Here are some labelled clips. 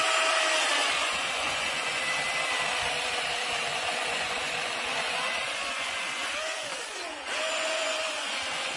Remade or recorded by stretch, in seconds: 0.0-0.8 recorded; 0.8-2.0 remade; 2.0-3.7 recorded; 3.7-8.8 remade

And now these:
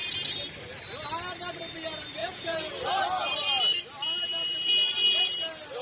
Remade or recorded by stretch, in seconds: 0.0-2.2 recorded; 2.2-2.7 remade; 2.7-5.8 recorded

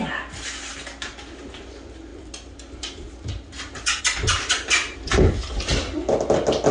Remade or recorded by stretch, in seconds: 0.0-6.7 recorded

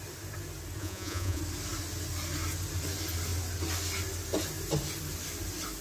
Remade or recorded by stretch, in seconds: 0.0-0.8 recorded; 0.8-1.4 remade; 1.4-5.8 recorded